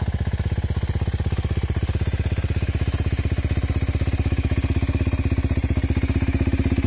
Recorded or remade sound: recorded